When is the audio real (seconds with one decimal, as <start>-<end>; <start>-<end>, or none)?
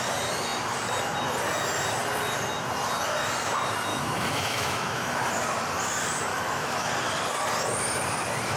0.0-3.9; 5.2-6.3; 6.9-8.6